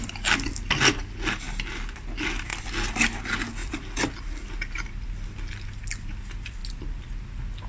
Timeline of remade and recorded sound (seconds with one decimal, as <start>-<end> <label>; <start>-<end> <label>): 0.0-3.6 recorded; 3.6-4.1 remade; 4.1-7.7 recorded